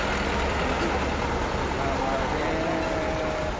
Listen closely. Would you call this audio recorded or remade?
recorded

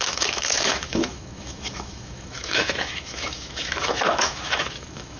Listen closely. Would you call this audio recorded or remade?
remade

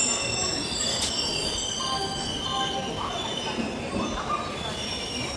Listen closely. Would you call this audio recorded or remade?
recorded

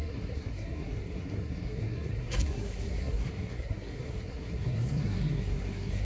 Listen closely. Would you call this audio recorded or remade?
remade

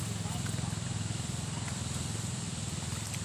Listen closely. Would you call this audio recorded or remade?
recorded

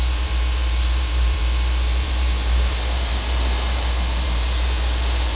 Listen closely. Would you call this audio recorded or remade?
remade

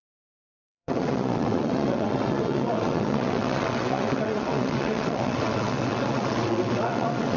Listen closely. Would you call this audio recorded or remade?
remade